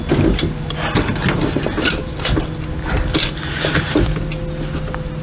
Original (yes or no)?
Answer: yes